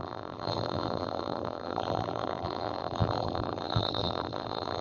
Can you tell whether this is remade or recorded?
remade